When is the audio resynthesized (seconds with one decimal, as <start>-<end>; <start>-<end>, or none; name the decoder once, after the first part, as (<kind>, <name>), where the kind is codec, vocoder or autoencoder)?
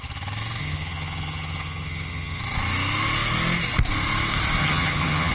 0.6-2.4 (vocoder, HiFi-GAN); 4.6-5.3